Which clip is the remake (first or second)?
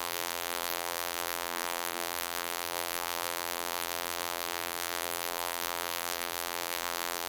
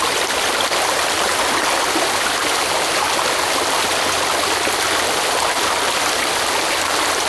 first